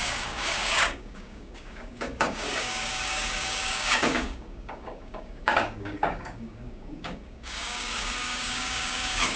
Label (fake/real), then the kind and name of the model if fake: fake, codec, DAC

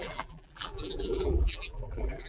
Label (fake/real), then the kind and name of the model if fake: fake, vocoder, BigVGAN v2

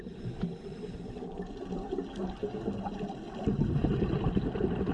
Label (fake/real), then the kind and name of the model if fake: real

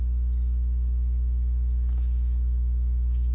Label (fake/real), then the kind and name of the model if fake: real